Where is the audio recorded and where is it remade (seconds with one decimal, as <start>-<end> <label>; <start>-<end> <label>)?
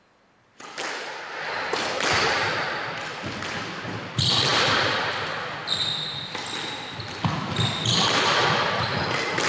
0.0-9.5 recorded